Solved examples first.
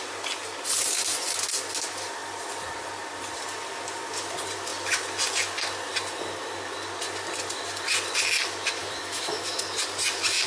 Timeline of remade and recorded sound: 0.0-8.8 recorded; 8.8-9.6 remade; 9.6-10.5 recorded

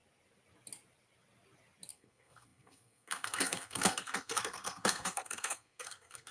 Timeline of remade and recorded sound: 0.0-1.9 recorded; 1.9-6.3 remade

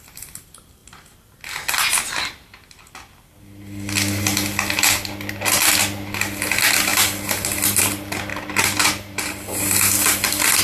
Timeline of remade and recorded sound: 0.0-6.9 recorded; 6.9-7.8 remade; 7.8-8.3 recorded; 8.3-10.6 remade